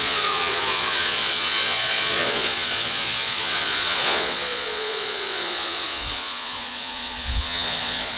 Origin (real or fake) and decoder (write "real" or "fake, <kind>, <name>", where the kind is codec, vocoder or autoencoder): fake, vocoder, Vocos